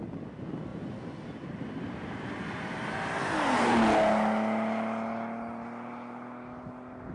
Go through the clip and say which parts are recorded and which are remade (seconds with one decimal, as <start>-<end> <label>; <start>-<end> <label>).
0.0-7.1 recorded

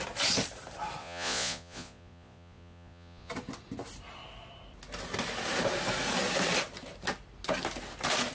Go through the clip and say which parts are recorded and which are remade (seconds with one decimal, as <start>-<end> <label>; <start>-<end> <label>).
0.0-1.0 recorded; 1.0-3.3 remade; 3.3-8.3 recorded